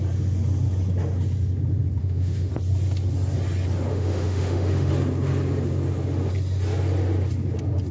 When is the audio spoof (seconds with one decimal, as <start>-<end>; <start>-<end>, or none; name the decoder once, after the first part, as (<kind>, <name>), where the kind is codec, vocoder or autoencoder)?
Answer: 2.0-2.5 (autoencoder, DAC-VAE); 3.9-4.9